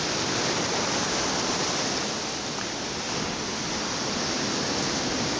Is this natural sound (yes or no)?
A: yes